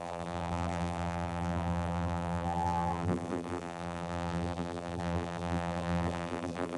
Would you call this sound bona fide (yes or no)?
no